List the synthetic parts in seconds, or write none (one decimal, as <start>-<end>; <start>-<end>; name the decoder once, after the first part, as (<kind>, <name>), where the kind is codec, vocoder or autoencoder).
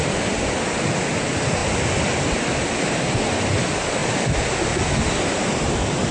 none